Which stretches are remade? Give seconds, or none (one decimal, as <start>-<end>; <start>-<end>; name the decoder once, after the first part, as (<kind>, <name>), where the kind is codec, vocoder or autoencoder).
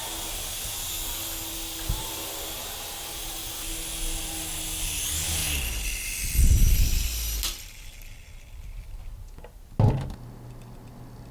none